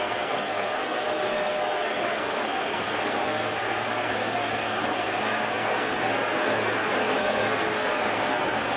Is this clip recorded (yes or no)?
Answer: no